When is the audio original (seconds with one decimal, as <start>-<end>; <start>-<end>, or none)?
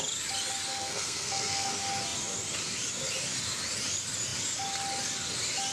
0.0-0.7; 1.7-5.7